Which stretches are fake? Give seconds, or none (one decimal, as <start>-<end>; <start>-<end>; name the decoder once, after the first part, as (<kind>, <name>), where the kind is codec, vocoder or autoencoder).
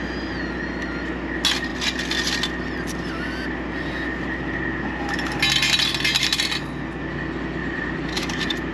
7.6-8.7 (vocoder, BigVGAN v2)